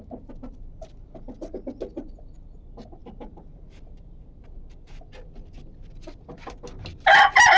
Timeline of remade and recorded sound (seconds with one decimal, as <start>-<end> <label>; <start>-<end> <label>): 0.0-7.6 recorded